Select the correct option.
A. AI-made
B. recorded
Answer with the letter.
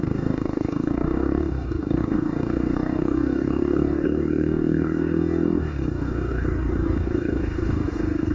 A